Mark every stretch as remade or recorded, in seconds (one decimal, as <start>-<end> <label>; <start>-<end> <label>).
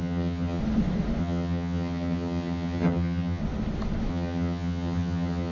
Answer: 0.0-0.6 remade; 0.6-1.2 recorded; 1.2-3.4 remade; 3.4-4.1 recorded; 4.1-5.5 remade